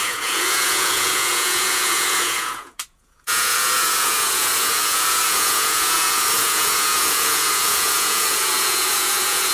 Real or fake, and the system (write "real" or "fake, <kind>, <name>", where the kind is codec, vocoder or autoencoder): fake, vocoder, Vocos